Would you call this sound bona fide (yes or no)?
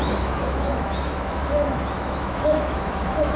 no